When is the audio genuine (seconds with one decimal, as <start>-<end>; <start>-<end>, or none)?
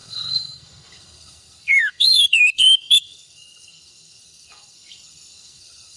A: none